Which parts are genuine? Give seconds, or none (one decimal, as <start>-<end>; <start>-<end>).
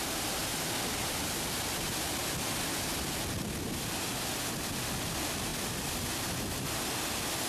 0.0-7.5